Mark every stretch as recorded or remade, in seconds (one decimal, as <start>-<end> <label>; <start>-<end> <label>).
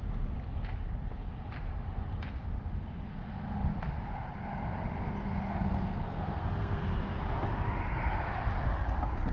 0.0-5.5 recorded; 5.5-6.8 remade; 6.8-9.3 recorded